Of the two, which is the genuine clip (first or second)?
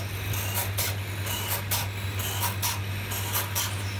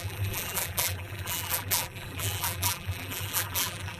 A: first